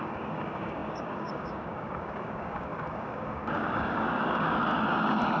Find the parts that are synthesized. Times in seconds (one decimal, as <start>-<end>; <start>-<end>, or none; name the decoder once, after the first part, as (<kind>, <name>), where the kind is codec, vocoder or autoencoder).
0.0-4.7 (codec, DAC)